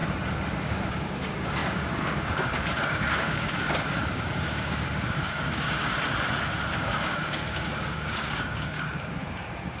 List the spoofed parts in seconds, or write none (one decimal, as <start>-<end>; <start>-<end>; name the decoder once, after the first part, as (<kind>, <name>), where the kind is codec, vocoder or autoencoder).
0.6-5.9 (codec, DAC); 6.7-9.8